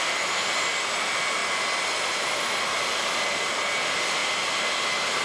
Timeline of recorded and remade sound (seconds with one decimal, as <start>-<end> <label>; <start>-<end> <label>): 0.0-1.4 remade; 1.4-3.0 recorded; 3.0-4.2 remade; 4.2-5.2 recorded